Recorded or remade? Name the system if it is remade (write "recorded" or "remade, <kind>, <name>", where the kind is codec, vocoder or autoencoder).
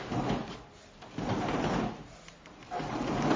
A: recorded